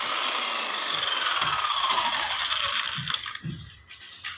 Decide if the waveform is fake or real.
real